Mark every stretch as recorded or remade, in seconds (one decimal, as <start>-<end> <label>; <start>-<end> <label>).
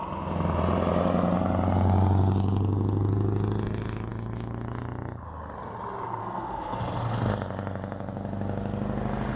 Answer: 0.0-6.2 recorded; 6.2-6.8 remade; 6.8-9.4 recorded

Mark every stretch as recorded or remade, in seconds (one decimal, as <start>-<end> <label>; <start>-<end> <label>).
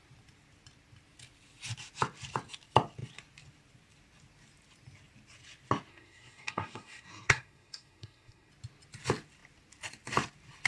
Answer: 0.0-5.9 recorded; 5.9-8.5 remade; 8.5-10.7 recorded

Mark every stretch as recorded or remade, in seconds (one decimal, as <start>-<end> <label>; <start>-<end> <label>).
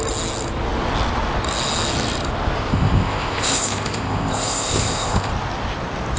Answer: 0.0-2.7 recorded; 2.7-5.3 remade; 5.3-6.2 recorded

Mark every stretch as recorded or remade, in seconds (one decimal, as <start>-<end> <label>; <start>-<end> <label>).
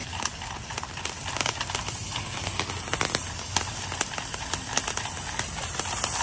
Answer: 0.0-0.7 remade; 0.7-6.2 recorded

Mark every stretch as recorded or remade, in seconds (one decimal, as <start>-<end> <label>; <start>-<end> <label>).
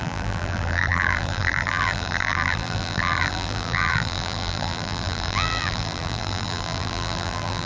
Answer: 0.0-7.7 remade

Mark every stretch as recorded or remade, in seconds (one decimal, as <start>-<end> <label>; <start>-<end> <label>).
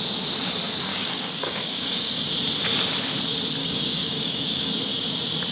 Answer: 0.0-0.9 recorded; 0.9-2.3 remade; 2.3-3.6 recorded; 3.6-4.7 remade; 4.7-5.5 recorded